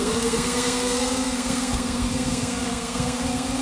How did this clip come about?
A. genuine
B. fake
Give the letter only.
B